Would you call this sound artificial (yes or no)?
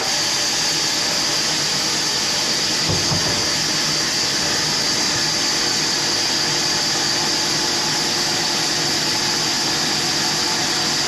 no